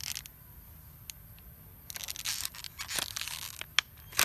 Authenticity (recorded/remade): recorded